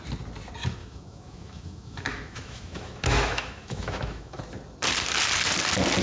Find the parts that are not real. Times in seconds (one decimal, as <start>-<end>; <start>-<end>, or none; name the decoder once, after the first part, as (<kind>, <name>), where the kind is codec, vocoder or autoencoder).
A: 0.8-4.4 (autoencoder, DAC-VAE)